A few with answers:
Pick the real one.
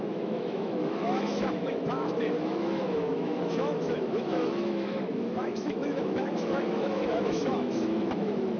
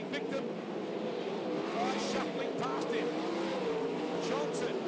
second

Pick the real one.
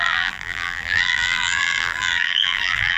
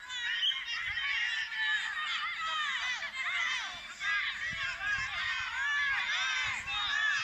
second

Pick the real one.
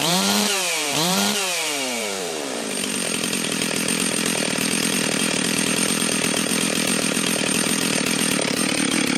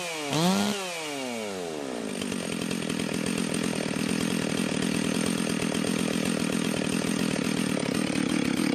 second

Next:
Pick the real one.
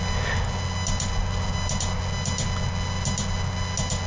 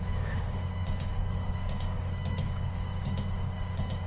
first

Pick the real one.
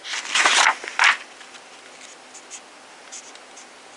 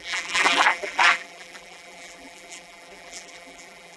first